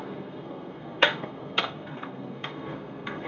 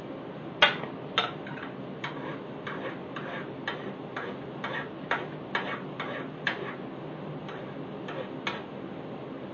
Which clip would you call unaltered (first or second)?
second